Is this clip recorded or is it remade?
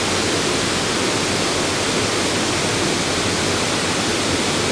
recorded